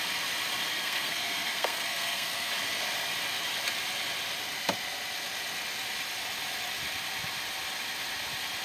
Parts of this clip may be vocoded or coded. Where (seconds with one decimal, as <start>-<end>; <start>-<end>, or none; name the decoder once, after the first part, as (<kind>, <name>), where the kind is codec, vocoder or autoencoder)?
0.7-2.5 (codec, SNAC)